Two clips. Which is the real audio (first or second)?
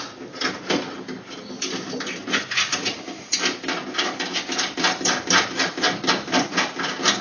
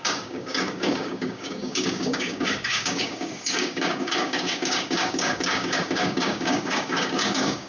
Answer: first